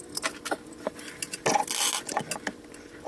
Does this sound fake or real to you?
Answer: real